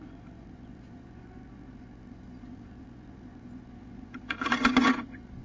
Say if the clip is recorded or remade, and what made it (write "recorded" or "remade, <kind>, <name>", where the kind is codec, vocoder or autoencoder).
remade, vocoder, Vocos